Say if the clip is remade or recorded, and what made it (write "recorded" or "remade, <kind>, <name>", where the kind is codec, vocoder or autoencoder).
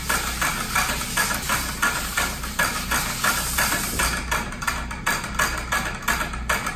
recorded